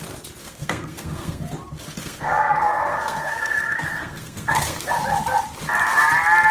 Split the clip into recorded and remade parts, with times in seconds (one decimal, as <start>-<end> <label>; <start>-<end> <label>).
0.0-0.4 recorded; 0.4-1.4 remade; 1.4-2.0 recorded; 2.0-4.9 remade; 4.9-6.5 recorded